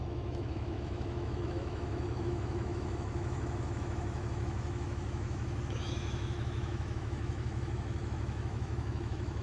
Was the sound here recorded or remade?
remade